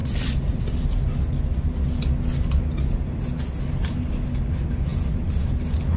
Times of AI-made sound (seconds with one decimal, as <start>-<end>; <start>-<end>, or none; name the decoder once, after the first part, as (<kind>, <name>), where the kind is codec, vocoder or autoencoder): 0.0-0.7 (vocoder, BigVGAN v2)